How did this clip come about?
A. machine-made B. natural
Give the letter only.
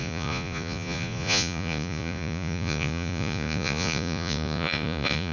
A